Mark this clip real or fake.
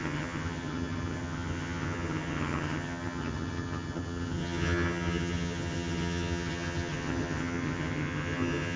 fake